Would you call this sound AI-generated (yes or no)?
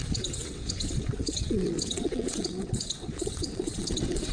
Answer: yes